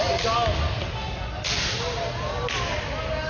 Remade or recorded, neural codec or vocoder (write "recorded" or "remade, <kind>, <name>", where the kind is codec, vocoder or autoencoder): recorded